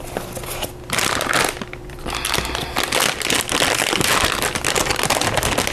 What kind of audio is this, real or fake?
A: real